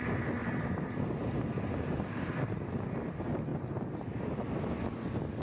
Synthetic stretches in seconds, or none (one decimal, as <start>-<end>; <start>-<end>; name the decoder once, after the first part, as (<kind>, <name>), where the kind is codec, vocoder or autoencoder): 0.4-2.8 (vocoder, BigVGAN v2); 3.5-4.2